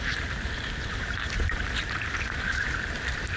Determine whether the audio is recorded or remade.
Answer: remade